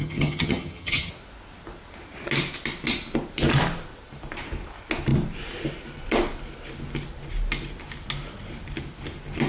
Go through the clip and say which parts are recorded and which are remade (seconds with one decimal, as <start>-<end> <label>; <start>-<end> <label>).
0.0-1.1 remade; 1.1-9.5 recorded